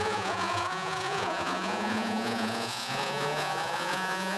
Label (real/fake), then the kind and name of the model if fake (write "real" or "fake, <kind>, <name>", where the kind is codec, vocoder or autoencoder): fake, vocoder, Vocos